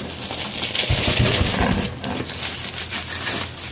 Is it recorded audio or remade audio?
recorded